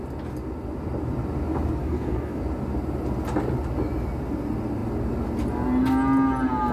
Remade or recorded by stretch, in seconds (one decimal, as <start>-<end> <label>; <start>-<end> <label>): 0.0-1.8 recorded; 1.8-2.4 remade; 2.4-6.7 recorded